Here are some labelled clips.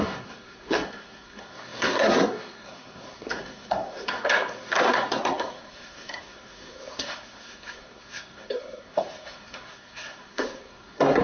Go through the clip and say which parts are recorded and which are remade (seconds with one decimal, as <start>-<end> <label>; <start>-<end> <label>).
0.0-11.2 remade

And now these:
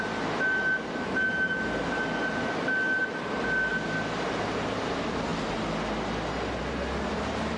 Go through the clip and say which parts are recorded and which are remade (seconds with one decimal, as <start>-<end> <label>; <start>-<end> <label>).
0.0-7.6 recorded

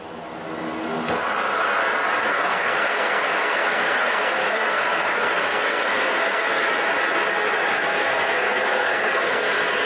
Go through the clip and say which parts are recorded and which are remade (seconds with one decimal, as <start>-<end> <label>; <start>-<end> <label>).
0.0-2.2 recorded; 2.2-6.7 remade; 6.7-7.7 recorded; 7.7-9.5 remade; 9.5-9.9 recorded

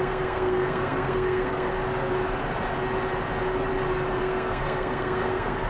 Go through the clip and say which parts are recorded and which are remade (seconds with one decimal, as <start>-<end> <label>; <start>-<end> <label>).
0.0-1.7 remade; 1.7-4.2 recorded; 4.2-5.7 remade